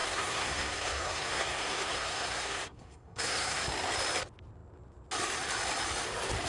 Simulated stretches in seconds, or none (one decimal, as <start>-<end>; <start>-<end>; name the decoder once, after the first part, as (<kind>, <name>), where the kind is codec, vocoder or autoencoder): 0.0-3.6 (codec, SNAC)